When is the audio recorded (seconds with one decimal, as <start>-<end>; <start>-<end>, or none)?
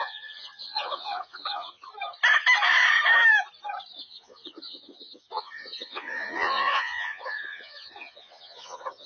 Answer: 1.9-4.0